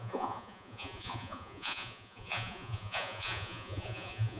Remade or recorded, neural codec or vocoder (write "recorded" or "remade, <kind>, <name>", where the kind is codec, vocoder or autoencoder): remade, vocoder, Vocos